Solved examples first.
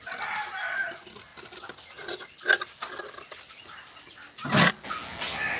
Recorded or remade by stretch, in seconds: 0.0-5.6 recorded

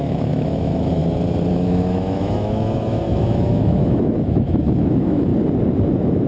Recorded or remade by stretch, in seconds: 0.0-1.0 remade; 1.0-1.5 recorded; 1.5-5.3 remade; 5.3-6.3 recorded

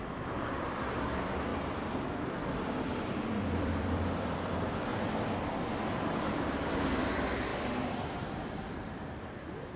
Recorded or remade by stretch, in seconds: 0.0-4.9 remade; 4.9-6.0 recorded; 6.0-9.8 remade

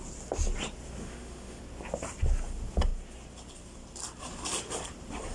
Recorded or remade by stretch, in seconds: 0.0-1.0 recorded; 1.0-1.6 remade; 1.6-5.3 recorded